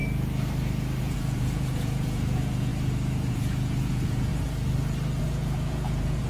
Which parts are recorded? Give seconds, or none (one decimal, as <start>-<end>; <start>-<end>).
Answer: 0.0-1.0; 2.7-3.3; 4.3-5.2

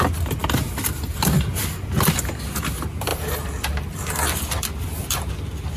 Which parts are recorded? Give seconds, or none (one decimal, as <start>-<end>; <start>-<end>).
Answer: 0.0-3.1; 5.3-5.8

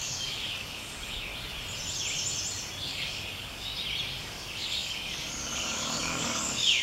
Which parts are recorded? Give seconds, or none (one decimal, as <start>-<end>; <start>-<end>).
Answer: 1.3-2.8; 3.7-4.2

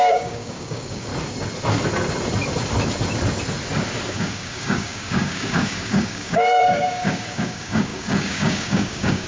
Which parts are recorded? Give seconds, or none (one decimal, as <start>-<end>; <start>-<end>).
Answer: 1.1-4.1

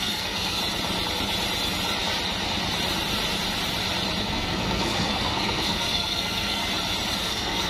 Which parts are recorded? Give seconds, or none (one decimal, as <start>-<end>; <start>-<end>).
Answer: 0.6-4.2; 6.6-7.2

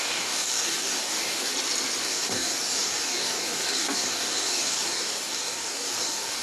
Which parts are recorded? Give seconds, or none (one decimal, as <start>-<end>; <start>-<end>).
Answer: 1.5-2.0

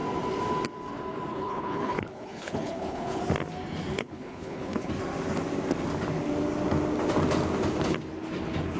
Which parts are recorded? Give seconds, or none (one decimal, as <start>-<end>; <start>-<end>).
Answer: 0.0-1.3; 3.2-3.9; 4.9-8.8

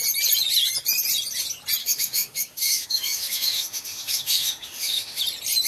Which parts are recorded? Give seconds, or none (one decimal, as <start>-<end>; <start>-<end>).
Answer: 0.0-1.8; 5.2-5.7